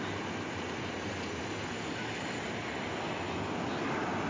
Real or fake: real